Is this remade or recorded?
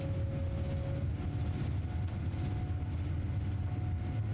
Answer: recorded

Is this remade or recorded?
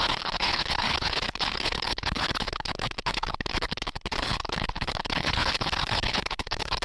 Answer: remade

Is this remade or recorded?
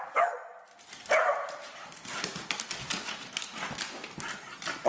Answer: recorded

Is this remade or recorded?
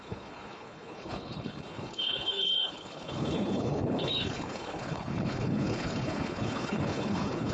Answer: remade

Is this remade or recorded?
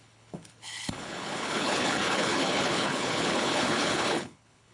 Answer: remade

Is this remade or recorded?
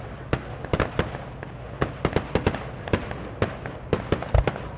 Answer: recorded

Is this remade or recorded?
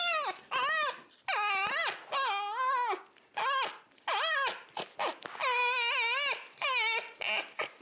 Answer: recorded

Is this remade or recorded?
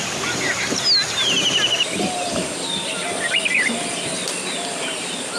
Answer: recorded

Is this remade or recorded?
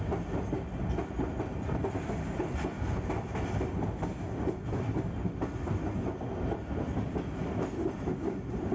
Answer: recorded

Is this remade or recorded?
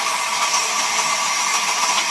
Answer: recorded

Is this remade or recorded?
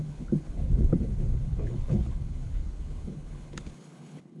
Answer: remade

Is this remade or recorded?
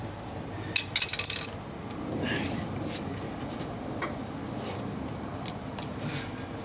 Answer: recorded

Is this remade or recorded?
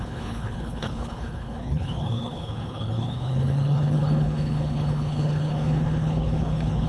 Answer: remade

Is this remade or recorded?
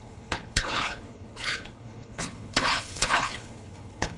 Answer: remade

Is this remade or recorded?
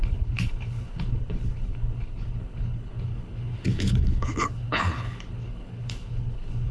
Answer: remade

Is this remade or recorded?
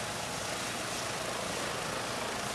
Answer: recorded